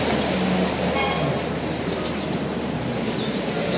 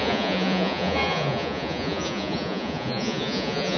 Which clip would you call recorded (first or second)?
first